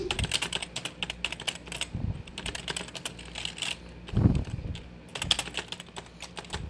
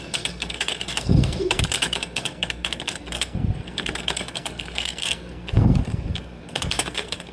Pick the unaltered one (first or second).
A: first